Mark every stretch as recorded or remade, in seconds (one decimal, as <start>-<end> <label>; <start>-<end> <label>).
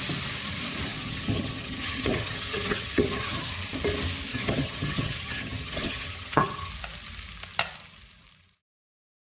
0.0-0.9 recorded; 0.9-3.5 remade; 3.5-4.3 recorded; 4.3-6.7 remade; 6.7-9.2 recorded